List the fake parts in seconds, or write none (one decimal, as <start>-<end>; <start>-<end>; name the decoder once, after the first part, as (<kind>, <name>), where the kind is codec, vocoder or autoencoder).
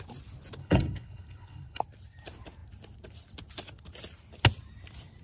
0.6-1.8 (codec, HILCodec)